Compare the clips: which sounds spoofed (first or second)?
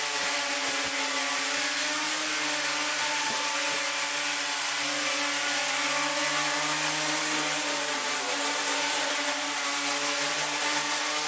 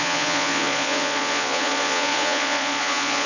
second